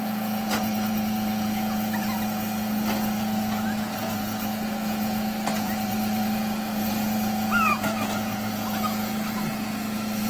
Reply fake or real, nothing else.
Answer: fake